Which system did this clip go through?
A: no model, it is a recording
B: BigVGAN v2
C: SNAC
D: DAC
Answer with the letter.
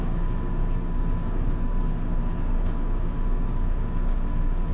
D